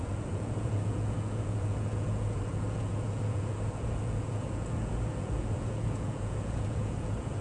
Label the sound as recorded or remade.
remade